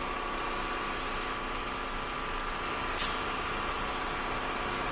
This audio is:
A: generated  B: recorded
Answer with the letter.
B